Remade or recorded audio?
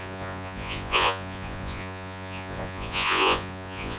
remade